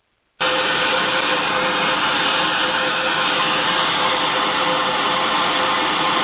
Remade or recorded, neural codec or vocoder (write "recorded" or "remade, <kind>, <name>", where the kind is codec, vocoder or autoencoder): recorded